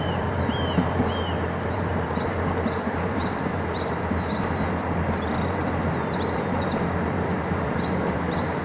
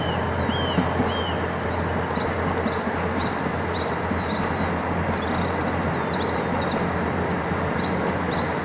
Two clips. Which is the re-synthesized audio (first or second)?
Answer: first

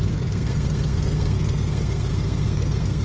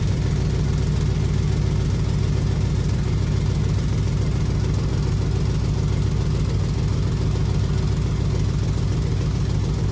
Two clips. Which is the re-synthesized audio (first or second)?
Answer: first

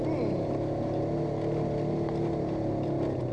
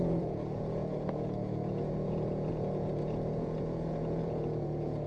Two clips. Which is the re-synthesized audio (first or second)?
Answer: second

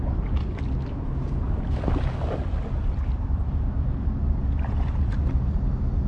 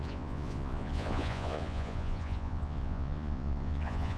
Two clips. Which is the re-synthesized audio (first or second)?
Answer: second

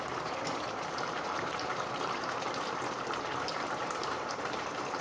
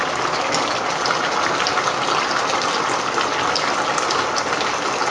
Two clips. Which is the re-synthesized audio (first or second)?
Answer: first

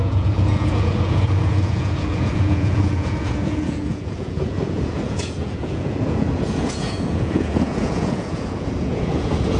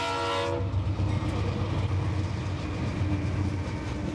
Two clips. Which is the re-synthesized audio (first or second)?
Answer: first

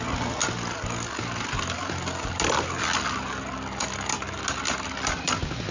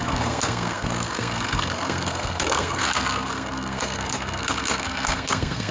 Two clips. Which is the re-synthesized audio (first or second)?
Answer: second